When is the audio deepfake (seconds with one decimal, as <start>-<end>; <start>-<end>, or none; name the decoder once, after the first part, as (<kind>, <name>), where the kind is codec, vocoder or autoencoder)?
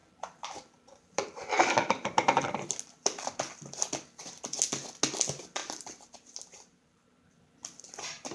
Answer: 0.0-3.5 (vocoder, BigVGAN v2); 5.6-7.4